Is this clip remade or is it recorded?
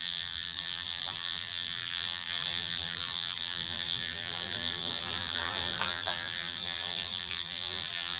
remade